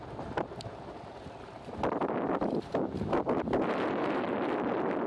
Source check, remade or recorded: recorded